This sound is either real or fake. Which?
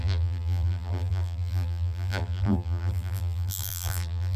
fake